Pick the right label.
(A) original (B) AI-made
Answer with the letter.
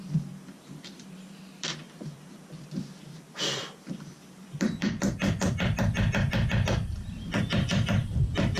B